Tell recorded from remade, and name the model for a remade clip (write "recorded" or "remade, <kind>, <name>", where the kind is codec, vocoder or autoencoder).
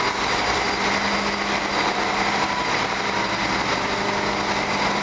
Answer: recorded